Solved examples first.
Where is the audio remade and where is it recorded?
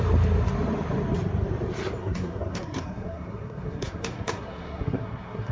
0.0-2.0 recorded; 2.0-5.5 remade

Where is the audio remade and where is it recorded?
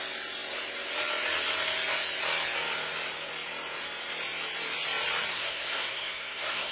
0.0-5.3 recorded; 5.3-6.7 remade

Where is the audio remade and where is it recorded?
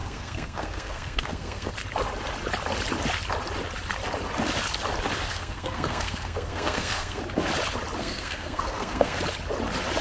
0.0-1.7 remade; 1.7-5.3 recorded; 5.3-7.2 remade; 7.2-8.0 recorded; 8.0-9.2 remade; 9.2-10.0 recorded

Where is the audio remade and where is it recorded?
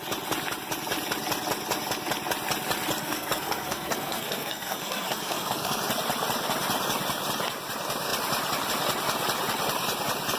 0.0-3.0 recorded; 3.0-5.8 remade; 5.8-10.4 recorded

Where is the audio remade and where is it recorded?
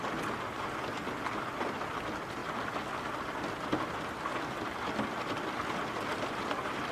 0.0-6.9 recorded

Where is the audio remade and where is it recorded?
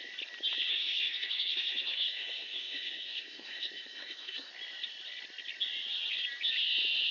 0.0-0.7 recorded; 0.7-4.5 remade; 4.5-7.1 recorded